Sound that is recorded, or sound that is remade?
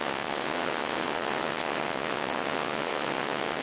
remade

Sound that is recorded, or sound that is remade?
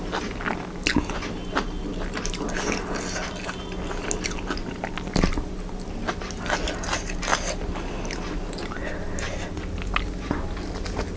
recorded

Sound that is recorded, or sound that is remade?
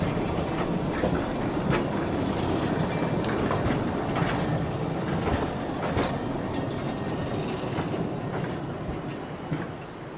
recorded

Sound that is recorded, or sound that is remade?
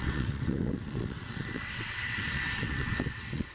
remade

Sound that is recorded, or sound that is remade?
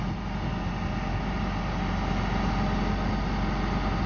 recorded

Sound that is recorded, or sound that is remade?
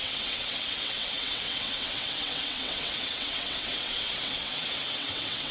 remade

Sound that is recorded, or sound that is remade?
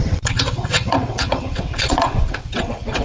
remade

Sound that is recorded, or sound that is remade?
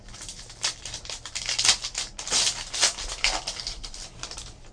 recorded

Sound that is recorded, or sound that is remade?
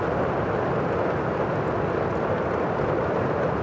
recorded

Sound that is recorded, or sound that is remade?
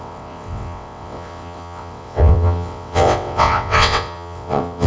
remade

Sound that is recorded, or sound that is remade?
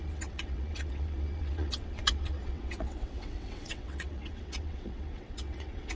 remade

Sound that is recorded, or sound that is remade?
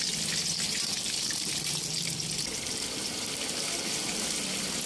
recorded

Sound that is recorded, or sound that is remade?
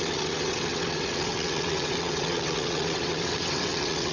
remade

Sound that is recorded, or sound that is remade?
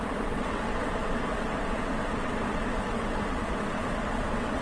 remade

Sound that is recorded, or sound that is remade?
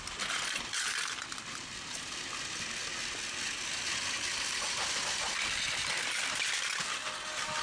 recorded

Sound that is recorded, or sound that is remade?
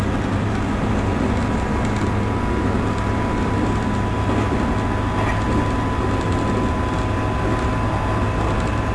recorded